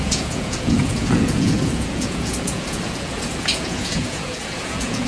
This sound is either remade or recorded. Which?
remade